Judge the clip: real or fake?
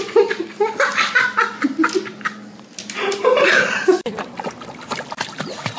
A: real